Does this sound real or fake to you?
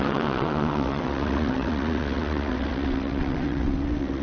fake